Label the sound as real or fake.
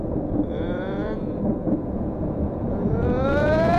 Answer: fake